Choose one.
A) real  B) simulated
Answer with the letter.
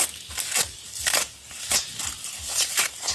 A